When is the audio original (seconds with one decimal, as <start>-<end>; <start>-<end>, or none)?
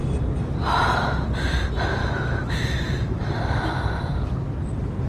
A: 0.0-2.0; 3.3-5.1